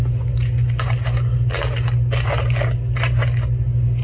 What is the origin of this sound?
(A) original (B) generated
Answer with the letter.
A